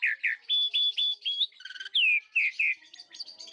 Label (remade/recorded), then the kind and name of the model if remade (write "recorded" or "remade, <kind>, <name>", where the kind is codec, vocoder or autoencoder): recorded